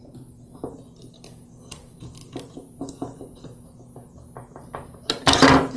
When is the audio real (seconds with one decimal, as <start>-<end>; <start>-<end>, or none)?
0.0-5.8